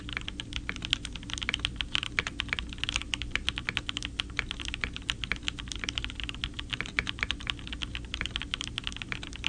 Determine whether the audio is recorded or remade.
recorded